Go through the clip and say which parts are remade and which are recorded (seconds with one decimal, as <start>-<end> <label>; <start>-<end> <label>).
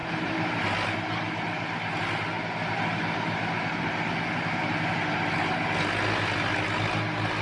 0.0-0.7 remade; 0.7-7.4 recorded